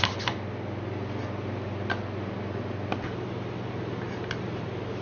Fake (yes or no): no